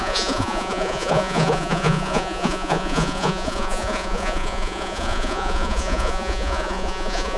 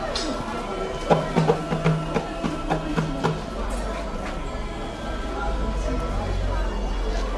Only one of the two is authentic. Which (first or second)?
second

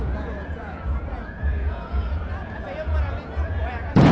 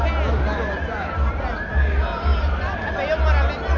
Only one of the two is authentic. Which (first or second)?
second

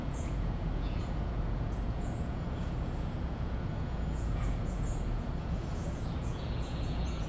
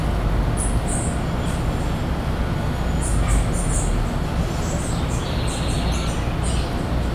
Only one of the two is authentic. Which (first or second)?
second